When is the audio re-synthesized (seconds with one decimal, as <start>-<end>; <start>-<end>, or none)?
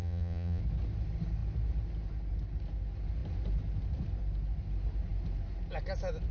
0.0-0.6